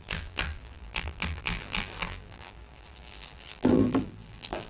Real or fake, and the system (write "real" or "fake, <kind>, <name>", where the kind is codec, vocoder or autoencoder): fake, vocoder, BigVGAN v2